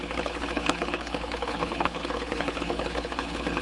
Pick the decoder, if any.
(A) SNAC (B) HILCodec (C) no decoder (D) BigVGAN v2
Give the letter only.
B